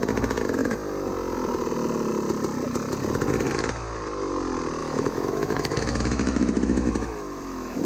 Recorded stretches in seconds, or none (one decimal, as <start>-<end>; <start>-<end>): 0.0-4.8